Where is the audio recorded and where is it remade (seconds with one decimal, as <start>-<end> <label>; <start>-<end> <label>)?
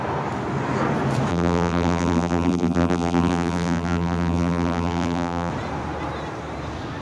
0.0-1.3 recorded; 1.3-5.5 remade; 5.5-7.0 recorded